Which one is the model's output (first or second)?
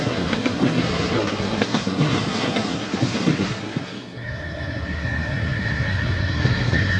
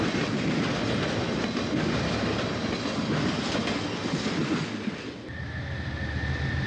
first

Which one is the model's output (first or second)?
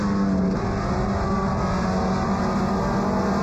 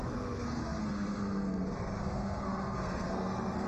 second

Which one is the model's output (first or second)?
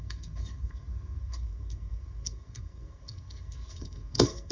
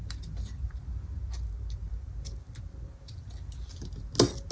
first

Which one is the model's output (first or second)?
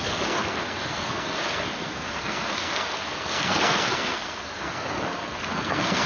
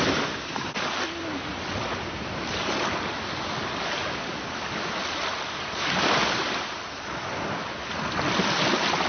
first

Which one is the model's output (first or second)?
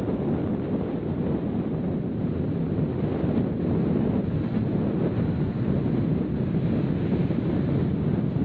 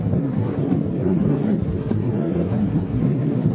second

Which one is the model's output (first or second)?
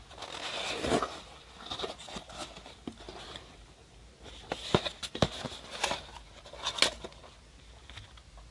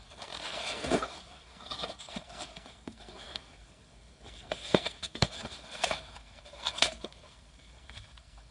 second